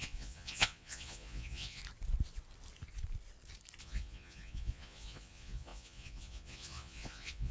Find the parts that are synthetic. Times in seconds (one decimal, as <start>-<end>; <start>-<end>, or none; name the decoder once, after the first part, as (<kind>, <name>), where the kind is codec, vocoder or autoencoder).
0.0-1.8 (vocoder, Vocos); 3.8-7.5